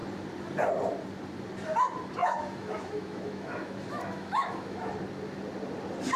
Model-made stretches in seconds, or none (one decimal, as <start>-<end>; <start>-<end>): 2.2-4.9